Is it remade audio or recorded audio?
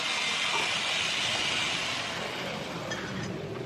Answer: recorded